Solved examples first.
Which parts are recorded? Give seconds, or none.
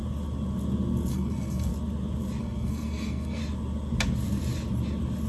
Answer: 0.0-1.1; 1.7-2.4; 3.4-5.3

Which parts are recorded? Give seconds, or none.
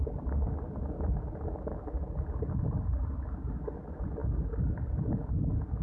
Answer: 0.0-5.8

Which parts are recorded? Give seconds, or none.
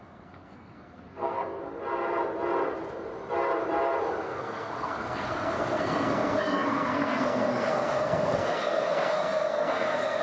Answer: 1.6-4.2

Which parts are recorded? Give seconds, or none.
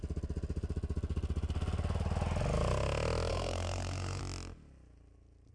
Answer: 0.0-3.3; 4.2-5.5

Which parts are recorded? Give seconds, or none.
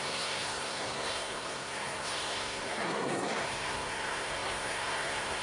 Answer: none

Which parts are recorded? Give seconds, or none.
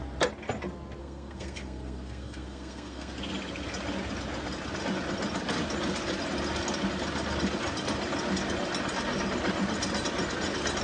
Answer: 0.0-1.0; 3.1-10.8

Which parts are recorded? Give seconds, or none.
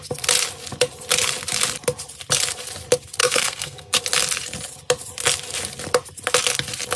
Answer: 0.0-3.2; 4.0-7.0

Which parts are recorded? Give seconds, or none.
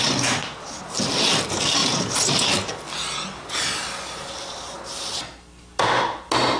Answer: 0.0-6.6